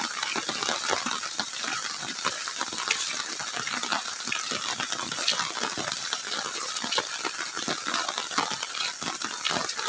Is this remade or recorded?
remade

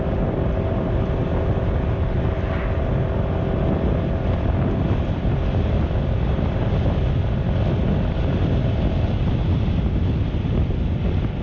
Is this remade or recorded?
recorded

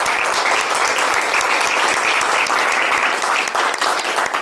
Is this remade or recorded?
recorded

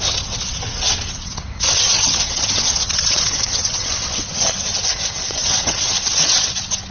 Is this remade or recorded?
remade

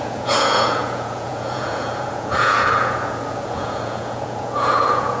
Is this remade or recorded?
remade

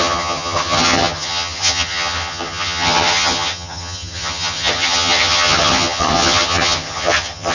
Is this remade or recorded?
remade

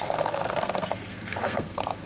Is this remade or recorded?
remade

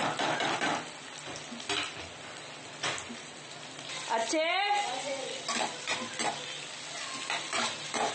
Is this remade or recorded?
recorded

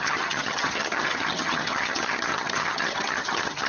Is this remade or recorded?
remade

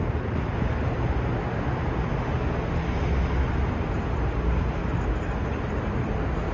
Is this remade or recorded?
recorded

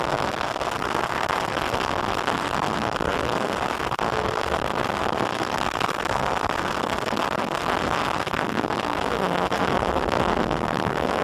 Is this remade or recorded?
remade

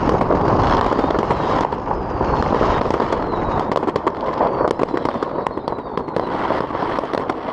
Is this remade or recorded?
recorded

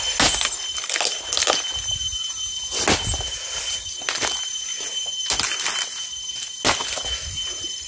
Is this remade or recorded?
recorded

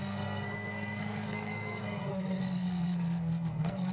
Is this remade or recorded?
remade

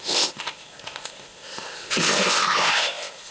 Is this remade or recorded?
remade